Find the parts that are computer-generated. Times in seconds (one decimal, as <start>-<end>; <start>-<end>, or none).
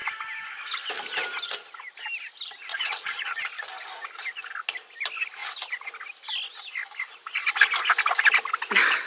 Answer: 2.7-3.5